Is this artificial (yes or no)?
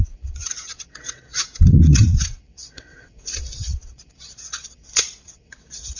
yes